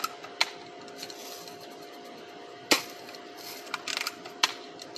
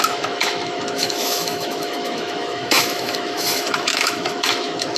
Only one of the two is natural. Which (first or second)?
first